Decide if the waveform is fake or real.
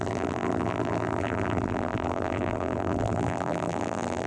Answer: fake